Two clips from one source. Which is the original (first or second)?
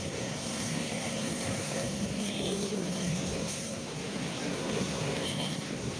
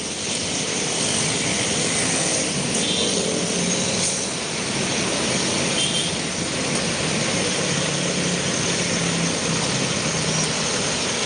second